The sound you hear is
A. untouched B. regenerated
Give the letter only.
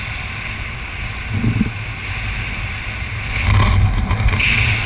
A